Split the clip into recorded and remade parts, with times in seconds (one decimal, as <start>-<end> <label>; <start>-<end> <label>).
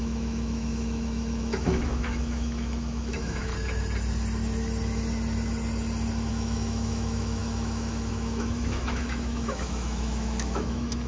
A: 0.0-3.5 remade; 3.5-6.3 recorded; 6.3-11.1 remade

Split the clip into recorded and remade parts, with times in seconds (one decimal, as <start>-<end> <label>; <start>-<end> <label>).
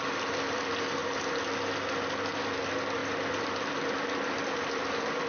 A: 0.0-1.0 remade; 1.0-1.9 recorded; 1.9-5.3 remade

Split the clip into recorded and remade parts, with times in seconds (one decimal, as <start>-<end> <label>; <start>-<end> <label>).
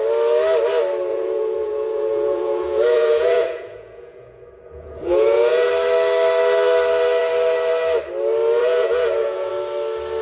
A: 0.0-1.1 recorded; 1.1-5.7 remade; 5.7-8.6 recorded; 8.6-9.5 remade; 9.5-10.2 recorded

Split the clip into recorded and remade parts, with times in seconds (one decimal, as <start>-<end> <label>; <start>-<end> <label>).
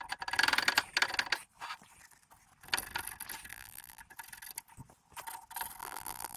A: 0.0-3.5 recorded; 3.5-4.0 remade; 4.0-5.8 recorded; 5.8-6.4 remade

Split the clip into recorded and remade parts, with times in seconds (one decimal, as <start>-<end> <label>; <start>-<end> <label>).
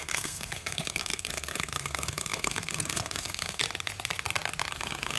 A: 0.0-3.6 remade; 3.6-4.7 recorded; 4.7-5.2 remade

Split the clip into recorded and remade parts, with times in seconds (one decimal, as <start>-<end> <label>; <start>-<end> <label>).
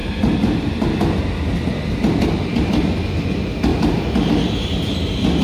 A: 0.0-5.4 recorded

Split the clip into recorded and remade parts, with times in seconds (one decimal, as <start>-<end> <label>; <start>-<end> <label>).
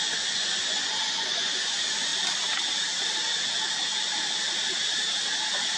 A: 0.0-2.1 remade; 2.1-5.8 recorded